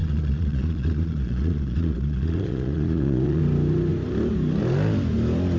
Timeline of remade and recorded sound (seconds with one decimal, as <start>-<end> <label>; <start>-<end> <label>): 0.0-3.4 remade; 3.4-5.6 recorded